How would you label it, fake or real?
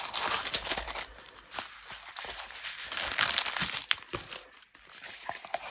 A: real